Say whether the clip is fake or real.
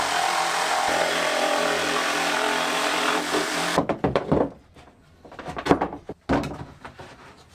fake